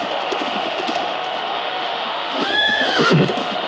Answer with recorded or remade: remade